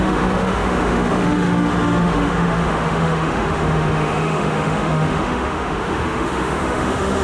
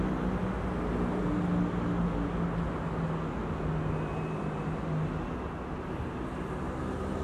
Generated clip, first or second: first